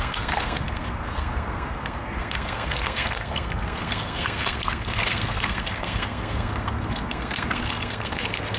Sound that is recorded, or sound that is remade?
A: remade